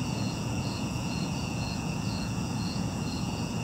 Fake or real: fake